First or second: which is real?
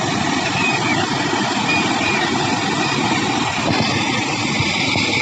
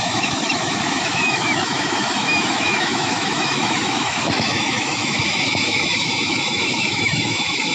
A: first